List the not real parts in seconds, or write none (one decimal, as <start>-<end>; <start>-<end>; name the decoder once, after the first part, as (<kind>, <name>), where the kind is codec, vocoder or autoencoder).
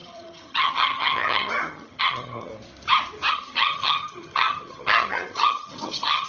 0.0-2.5 (vocoder, HiFi-GAN); 3.3-6.3